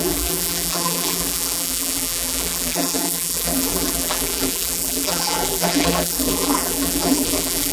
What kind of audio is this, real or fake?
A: fake